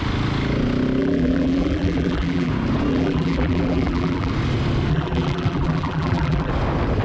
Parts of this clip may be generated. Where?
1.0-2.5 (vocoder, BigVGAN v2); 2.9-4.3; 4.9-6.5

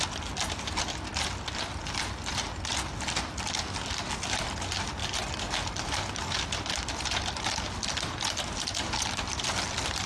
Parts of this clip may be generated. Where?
none

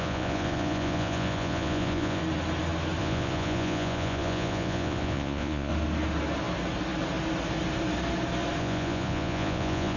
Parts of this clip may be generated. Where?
0.0-2.2 (vocoder, Vocos); 3.0-5.7; 8.6-10.0